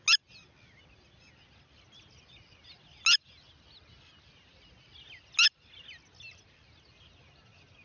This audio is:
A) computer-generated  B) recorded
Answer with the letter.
B